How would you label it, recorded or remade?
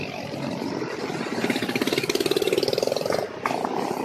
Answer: recorded